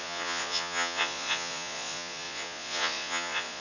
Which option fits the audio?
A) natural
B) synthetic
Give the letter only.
B